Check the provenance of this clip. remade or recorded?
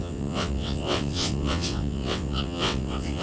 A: remade